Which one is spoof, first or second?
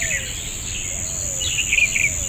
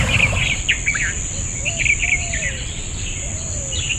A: second